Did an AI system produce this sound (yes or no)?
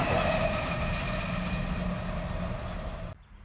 no